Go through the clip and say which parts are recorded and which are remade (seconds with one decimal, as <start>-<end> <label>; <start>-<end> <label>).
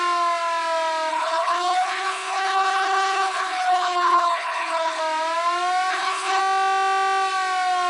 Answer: 0.0-1.1 recorded; 1.1-5.0 remade; 5.0-5.9 recorded; 5.9-6.4 remade; 6.4-7.9 recorded